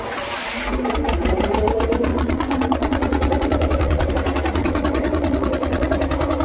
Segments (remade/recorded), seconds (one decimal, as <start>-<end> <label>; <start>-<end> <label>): 0.0-2.1 recorded; 2.1-4.1 remade; 4.1-4.6 recorded; 4.6-5.9 remade; 5.9-6.4 recorded